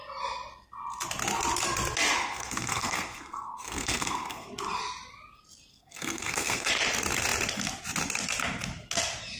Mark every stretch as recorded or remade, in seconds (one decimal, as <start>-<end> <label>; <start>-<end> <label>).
0.0-2.2 recorded; 2.2-4.5 remade; 4.5-5.7 recorded; 5.7-6.7 remade; 6.7-9.4 recorded